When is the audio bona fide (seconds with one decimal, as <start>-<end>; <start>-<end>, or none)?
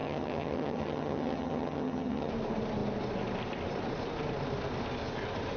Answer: 2.3-5.6